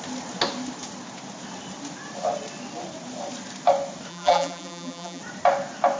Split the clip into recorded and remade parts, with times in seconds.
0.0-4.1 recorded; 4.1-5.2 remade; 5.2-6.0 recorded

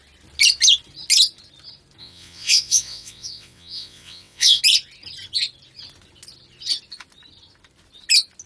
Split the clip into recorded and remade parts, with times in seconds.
0.0-2.0 recorded; 2.0-4.6 remade; 4.6-8.5 recorded